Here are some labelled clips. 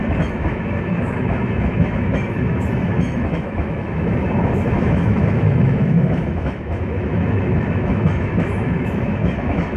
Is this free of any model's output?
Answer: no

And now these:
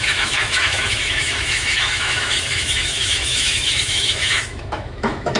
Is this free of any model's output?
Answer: no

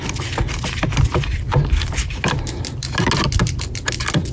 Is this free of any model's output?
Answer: yes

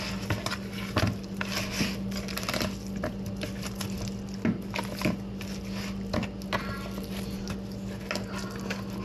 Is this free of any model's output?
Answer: yes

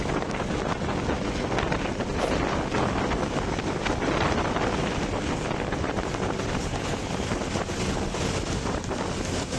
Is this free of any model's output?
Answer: yes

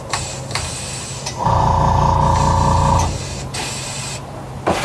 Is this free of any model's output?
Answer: yes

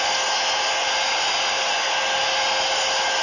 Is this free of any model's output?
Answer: yes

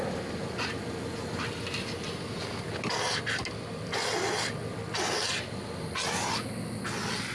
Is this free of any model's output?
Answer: yes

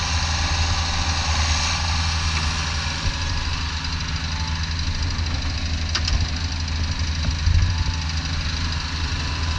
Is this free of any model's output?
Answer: yes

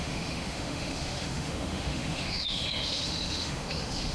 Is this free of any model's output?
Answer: no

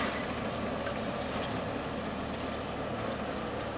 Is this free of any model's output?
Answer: yes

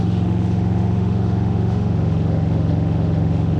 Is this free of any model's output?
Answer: no